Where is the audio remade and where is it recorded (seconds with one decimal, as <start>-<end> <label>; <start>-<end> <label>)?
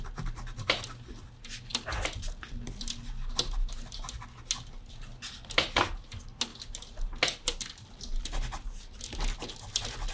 0.0-10.1 recorded